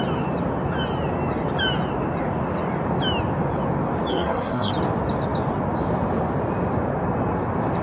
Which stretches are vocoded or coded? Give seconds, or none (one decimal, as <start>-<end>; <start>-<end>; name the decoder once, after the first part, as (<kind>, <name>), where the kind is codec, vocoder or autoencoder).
4.1-4.7 (codec, SNAC)